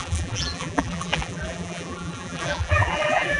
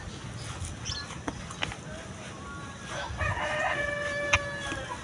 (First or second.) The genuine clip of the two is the second